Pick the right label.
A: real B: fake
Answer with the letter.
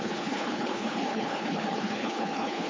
B